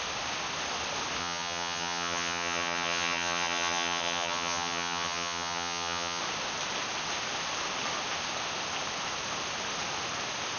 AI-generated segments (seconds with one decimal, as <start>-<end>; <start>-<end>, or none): 1.2-6.2